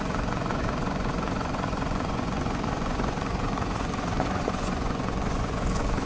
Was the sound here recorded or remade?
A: remade